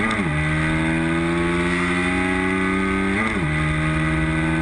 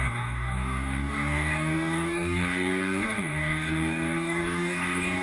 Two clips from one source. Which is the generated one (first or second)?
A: second